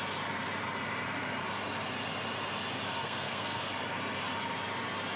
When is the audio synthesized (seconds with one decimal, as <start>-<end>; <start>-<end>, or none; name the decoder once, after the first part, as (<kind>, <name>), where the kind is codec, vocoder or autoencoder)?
3.0-3.6 (codec, SNAC)